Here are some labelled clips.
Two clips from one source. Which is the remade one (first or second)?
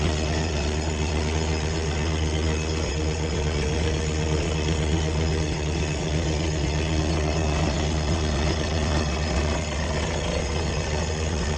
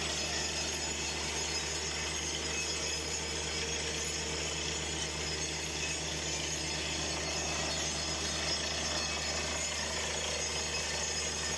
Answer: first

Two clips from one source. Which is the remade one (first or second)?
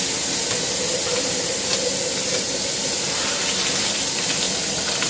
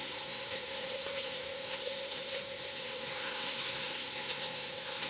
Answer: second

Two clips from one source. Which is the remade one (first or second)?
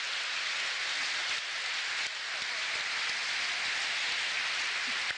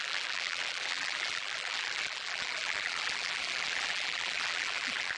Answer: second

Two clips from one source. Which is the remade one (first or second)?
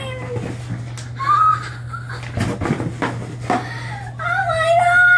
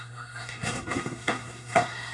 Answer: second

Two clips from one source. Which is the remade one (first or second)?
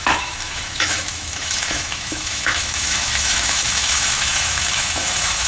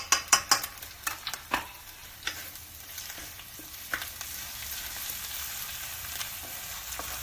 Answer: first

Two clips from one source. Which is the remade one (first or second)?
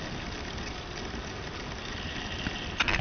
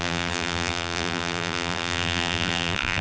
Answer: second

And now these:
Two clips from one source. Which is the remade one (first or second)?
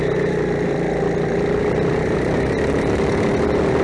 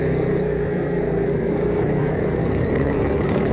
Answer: second